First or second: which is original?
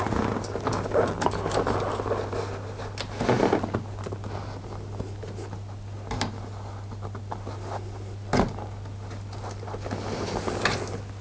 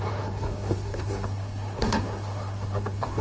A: first